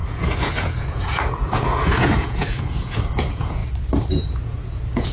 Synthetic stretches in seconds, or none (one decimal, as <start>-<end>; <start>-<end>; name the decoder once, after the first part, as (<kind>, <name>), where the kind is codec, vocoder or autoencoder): 0.0-3.6 (vocoder, Vocos); 4.2-5.1